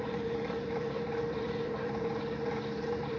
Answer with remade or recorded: remade